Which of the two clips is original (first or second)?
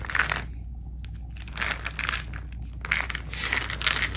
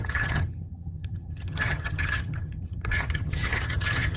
first